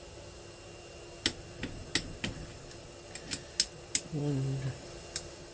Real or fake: real